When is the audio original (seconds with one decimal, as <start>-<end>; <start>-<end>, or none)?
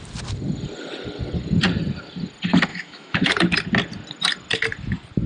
0.0-2.7; 3.3-5.3